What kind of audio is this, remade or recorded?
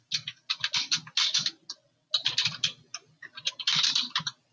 recorded